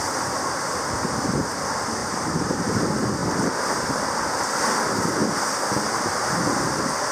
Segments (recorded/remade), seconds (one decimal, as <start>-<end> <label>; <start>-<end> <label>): 0.0-2.0 recorded; 2.0-2.8 remade; 2.8-7.1 recorded